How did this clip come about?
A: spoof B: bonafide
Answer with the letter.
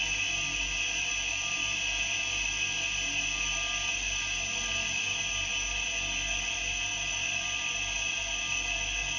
B